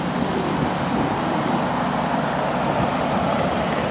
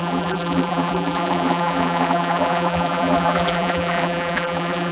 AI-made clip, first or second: second